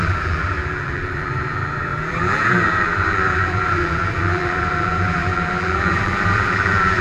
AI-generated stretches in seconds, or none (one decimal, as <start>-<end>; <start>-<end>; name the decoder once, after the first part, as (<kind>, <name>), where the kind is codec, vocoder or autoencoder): 0.0-7.0 (vocoder, BigVGAN v2)